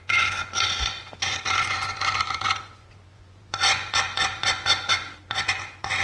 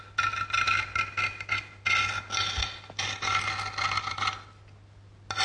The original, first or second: second